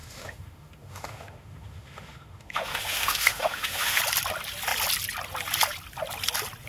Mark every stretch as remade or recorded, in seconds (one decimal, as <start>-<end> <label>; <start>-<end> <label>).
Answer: 0.0-4.0 remade; 4.0-6.7 recorded